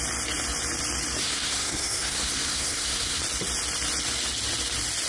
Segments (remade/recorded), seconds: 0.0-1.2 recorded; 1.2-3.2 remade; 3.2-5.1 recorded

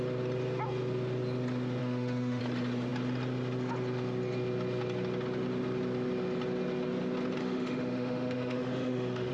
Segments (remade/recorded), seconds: 0.0-1.8 recorded; 1.8-2.4 remade; 2.4-7.4 recorded; 7.4-9.3 remade

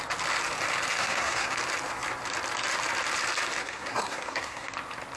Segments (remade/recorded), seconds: 0.0-1.0 recorded; 1.0-1.5 remade; 1.5-3.6 recorded; 3.6-4.7 remade; 4.7-5.2 recorded

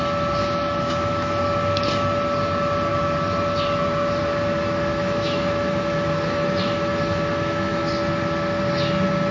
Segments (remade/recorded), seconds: 0.0-0.4 recorded; 0.4-1.4 remade; 1.4-4.9 recorded; 4.9-7.8 remade; 7.8-9.3 recorded

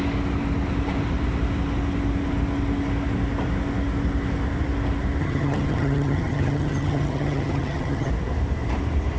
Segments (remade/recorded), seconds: 0.0-5.2 recorded; 5.2-8.1 remade; 8.1-9.2 recorded

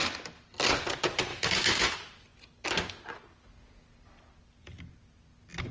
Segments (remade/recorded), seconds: 0.0-1.3 recorded; 1.3-1.9 remade; 1.9-5.7 recorded